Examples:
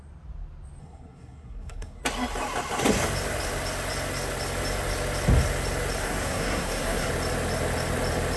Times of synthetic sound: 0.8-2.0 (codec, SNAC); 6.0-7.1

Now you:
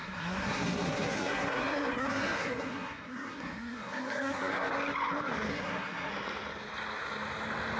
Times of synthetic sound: 0.0-4.7 (codec, SNAC); 5.5-6.1

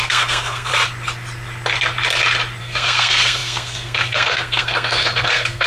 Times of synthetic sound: 0.0-0.7 (codec, SNAC); 2.6-5.7

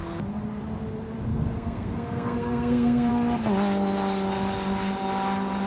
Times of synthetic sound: 1.3-3.1 (codec, SNAC)

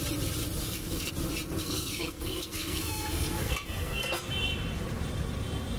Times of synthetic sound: 0.6-1.1 (codec, SNAC); 1.6-4.3

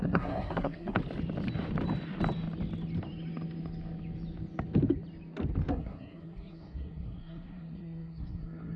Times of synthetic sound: 0.0-1.0 (codec, SNAC); 5.7-8.8